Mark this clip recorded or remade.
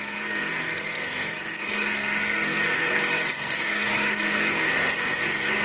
remade